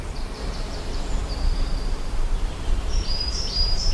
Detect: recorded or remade remade